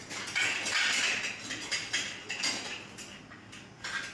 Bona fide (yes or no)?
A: yes